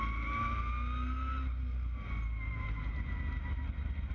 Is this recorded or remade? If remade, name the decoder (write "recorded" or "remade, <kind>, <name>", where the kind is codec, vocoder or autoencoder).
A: recorded